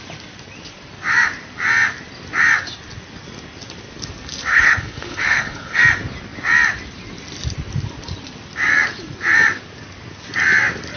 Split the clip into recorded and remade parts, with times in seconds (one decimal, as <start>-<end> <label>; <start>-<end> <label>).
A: 0.0-4.5 recorded; 4.5-5.8 remade; 5.8-11.0 recorded